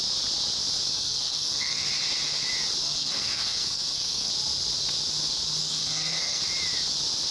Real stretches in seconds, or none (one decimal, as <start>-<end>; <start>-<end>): 0.0-0.9; 1.9-2.8; 4.3-5.6; 6.4-7.3